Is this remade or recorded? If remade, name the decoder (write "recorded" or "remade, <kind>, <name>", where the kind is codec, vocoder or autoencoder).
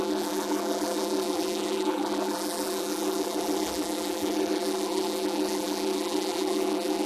remade, vocoder, BigVGAN v2